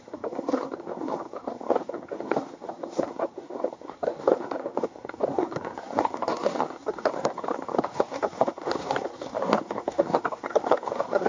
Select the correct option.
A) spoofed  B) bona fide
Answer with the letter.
A